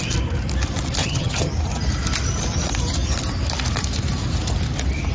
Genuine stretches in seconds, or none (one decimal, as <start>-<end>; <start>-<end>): 0.0-1.0; 1.5-5.1